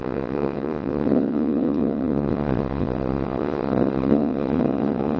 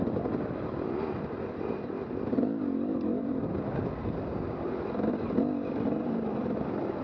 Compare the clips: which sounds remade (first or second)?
first